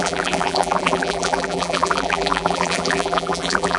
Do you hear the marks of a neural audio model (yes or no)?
yes